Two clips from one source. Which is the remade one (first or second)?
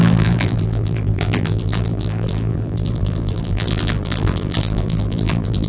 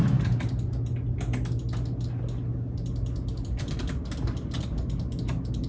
first